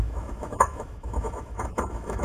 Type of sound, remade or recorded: remade